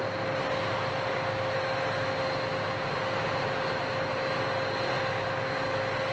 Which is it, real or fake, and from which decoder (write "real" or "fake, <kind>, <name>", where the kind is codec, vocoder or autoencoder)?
real